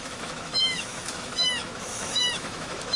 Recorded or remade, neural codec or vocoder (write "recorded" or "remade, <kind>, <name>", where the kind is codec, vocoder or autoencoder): remade, autoencoder, DAC-VAE